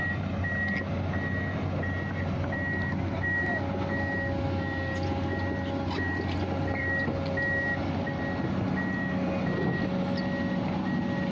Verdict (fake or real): real